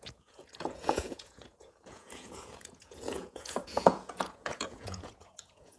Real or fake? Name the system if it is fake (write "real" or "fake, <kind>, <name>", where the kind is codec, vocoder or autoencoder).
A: fake, vocoder, Vocos